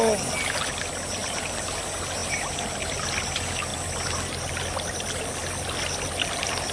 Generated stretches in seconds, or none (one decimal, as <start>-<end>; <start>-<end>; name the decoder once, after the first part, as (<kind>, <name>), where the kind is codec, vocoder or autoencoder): 1.2-1.8 (vocoder, BigVGAN v2); 2.2-2.8; 3.7-4.5